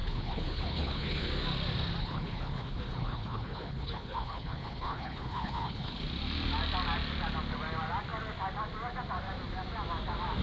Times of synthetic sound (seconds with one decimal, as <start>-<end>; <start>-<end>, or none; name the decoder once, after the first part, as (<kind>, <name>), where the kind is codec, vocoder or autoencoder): 0.0-1.3 (codec, HILCodec); 2.0-6.0